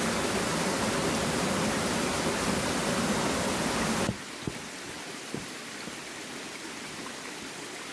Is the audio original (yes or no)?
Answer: yes